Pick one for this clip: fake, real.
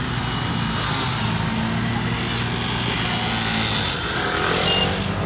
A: real